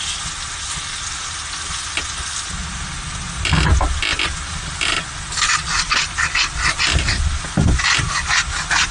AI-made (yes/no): no